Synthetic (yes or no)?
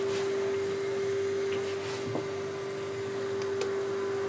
no